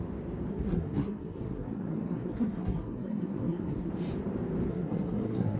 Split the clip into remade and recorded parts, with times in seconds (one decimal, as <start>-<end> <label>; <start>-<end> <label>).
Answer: 0.0-0.5 recorded; 0.5-3.9 remade; 3.9-4.7 recorded; 4.7-5.6 remade